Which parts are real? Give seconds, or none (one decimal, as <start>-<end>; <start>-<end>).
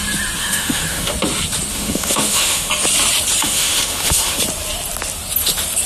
0.0-0.4; 1.1-1.7; 2.7-3.4; 4.4-5.9